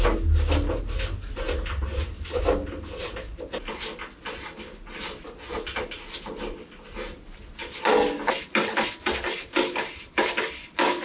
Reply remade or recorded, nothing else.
recorded